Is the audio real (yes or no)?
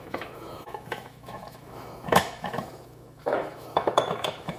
no